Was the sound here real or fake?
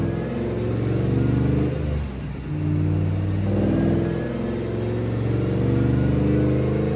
real